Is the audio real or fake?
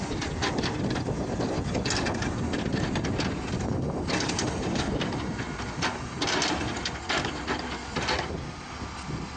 real